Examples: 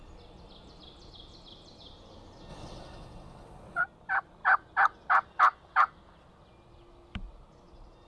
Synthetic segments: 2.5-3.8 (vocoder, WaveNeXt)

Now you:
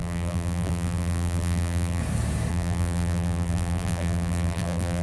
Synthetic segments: 0.0-2.0 (vocoder, BigVGAN v2); 2.5-5.0

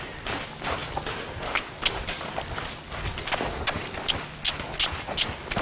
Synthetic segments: none

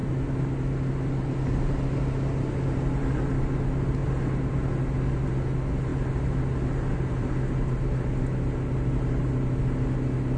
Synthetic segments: none